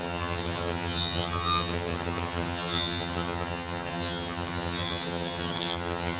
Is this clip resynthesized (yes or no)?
yes